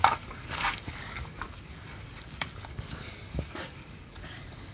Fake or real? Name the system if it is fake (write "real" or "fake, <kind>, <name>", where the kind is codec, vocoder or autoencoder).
fake, codec, DAC